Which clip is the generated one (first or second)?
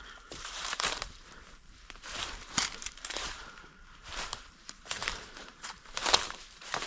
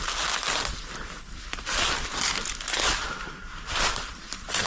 first